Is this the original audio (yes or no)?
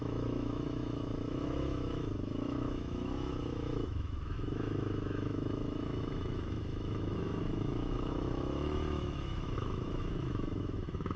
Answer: no